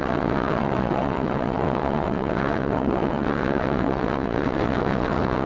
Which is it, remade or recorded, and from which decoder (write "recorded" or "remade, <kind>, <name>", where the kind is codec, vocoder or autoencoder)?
remade, vocoder, WaveNeXt